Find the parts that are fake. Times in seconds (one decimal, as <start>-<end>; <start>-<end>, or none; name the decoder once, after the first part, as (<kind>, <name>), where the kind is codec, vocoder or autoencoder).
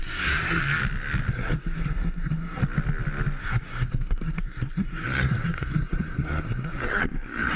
0.0-0.6 (codec, SNAC); 1.3-2.6; 3.4-7.6